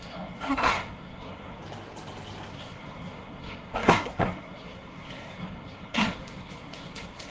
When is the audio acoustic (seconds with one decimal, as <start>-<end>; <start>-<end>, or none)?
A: 1.6-2.5